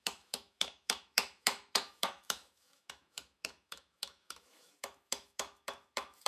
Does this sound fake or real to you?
fake